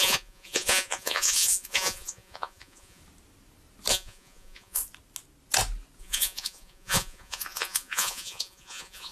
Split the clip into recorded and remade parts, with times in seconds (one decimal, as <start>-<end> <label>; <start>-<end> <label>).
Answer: 0.0-3.0 remade; 3.0-3.9 recorded; 3.9-4.8 remade; 4.8-6.0 recorded; 6.0-9.1 remade